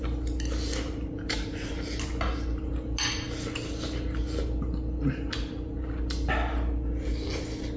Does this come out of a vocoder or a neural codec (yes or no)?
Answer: no